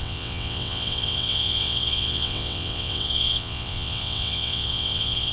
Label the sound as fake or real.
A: fake